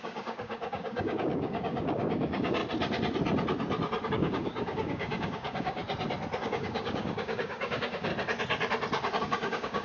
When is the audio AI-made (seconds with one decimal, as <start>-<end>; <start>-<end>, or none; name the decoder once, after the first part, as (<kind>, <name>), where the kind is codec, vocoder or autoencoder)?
0.0-2.6 (codec, DAC); 4.1-5.8; 6.4-8.1; 9.2-9.8